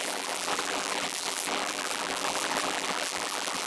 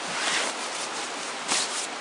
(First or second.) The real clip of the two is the second